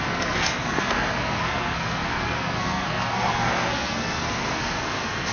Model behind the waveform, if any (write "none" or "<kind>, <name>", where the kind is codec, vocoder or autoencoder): codec, SNAC